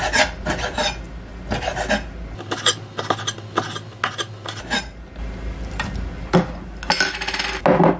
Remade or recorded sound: recorded